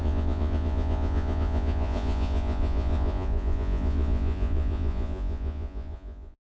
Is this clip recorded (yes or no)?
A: no